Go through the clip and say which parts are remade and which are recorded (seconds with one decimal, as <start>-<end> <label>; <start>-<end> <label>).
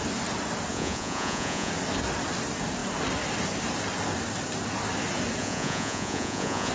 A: 0.0-0.7 recorded; 0.7-1.7 remade; 1.7-5.4 recorded; 5.4-6.7 remade